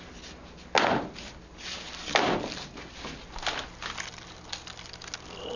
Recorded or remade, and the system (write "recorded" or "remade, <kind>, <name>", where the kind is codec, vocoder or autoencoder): recorded